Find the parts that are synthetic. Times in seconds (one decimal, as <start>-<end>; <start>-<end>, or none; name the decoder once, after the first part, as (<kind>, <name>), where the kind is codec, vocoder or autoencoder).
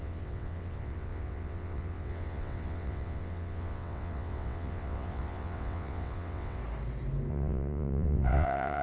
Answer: 0.0-6.6 (vocoder, WaveNeXt); 7.3-8.8